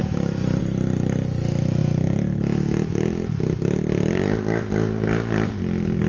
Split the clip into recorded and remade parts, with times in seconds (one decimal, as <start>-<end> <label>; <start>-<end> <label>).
0.0-0.6 remade; 0.6-6.1 recorded